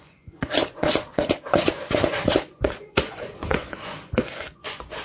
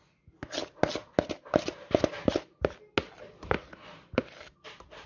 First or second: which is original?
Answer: second